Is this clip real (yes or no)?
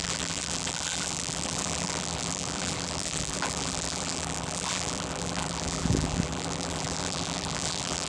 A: no